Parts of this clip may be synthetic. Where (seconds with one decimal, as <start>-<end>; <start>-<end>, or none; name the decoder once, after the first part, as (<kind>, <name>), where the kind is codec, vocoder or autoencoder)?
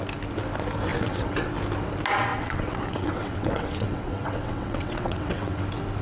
0.9-1.5 (vocoder, WaveNeXt); 2.3-5.6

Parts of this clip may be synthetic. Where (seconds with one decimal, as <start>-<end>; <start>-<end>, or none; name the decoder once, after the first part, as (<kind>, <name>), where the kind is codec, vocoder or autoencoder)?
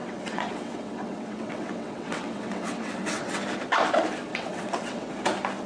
0.0-3.4 (vocoder, WaveNeXt); 4.3-5.1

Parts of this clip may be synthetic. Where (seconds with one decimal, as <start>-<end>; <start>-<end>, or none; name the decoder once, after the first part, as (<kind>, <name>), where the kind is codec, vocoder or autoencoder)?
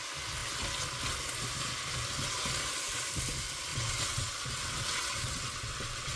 3.7-6.2 (vocoder, WaveNeXt)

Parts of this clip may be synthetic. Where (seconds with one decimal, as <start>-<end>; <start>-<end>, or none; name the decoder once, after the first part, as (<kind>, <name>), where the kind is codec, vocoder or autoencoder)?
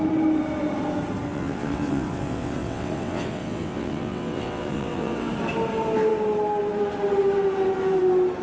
1.3-5.3 (vocoder, WaveNeXt)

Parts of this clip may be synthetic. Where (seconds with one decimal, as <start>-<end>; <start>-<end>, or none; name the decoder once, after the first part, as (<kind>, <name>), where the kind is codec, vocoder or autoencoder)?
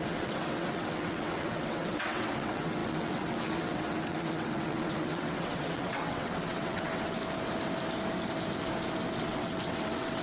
0.0-7.2 (vocoder, WaveNeXt); 9.2-10.2